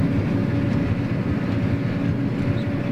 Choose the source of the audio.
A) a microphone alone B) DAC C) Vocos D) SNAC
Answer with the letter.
A